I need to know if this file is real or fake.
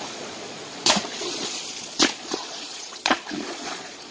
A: fake